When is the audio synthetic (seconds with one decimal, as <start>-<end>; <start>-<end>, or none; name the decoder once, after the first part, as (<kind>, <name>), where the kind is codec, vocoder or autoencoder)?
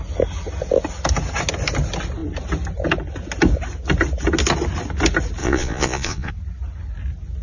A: 5.4-6.3 (vocoder, Vocos)